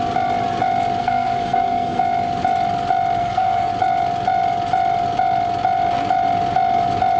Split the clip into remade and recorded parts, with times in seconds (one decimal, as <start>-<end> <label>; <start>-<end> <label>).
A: 0.0-1.0 recorded; 1.0-2.0 remade; 2.0-3.2 recorded; 3.2-3.7 remade; 3.7-7.2 recorded